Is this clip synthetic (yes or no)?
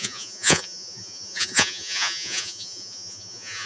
yes